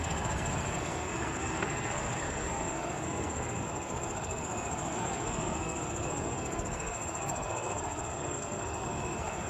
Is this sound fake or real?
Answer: fake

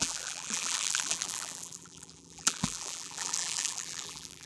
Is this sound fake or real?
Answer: fake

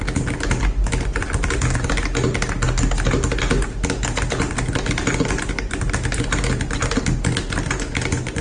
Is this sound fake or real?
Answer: real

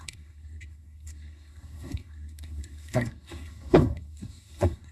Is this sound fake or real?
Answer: fake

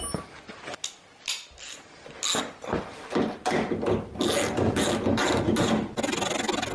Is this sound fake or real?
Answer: real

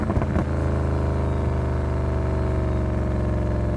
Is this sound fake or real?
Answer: real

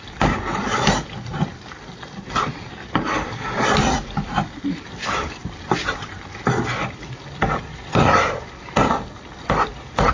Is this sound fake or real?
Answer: fake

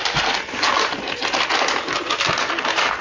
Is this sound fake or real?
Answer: real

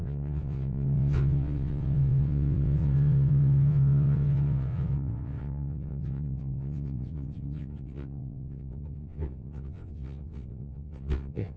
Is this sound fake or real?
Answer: fake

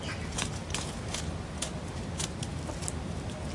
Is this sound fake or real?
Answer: real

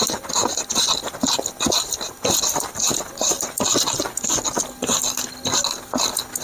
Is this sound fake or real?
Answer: real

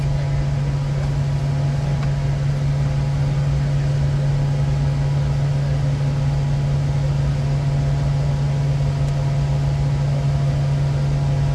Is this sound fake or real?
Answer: real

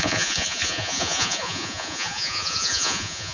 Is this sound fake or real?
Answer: fake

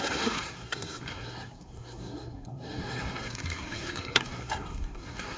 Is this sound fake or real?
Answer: fake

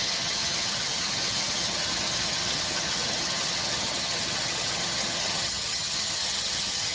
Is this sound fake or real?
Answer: fake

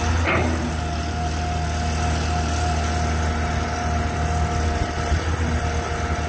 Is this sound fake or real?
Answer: real